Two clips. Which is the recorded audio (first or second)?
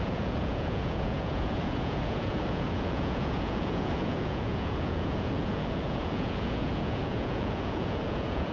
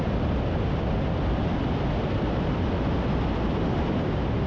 second